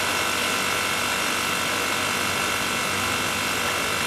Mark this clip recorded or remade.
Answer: recorded